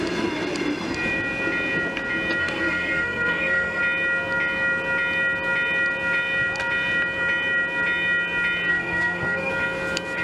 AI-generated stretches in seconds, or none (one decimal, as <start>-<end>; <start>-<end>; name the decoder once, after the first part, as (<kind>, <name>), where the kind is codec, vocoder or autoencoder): 2.4-3.8 (codec, SNAC); 8.7-9.5